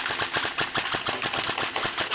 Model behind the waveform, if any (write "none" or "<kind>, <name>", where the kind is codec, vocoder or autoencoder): none